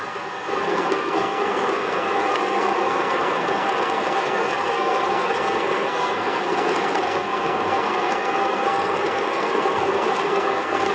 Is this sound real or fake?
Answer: fake